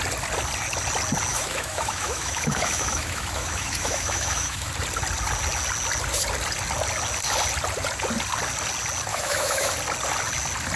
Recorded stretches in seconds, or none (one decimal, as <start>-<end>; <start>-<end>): 0.0-1.3; 4.7-9.1; 9.7-10.8